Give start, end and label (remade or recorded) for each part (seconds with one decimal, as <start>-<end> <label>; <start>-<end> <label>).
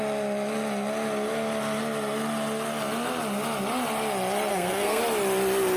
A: 0.0-4.5 recorded; 4.5-5.0 remade; 5.0-5.8 recorded